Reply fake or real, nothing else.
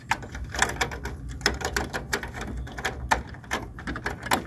real